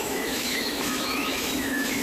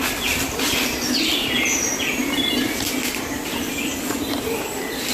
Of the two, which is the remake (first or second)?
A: first